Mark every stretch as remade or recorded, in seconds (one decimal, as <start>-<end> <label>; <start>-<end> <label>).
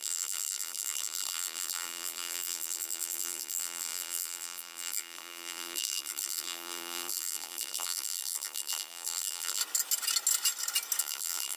0.0-9.6 remade; 9.6-11.0 recorded; 11.0-11.6 remade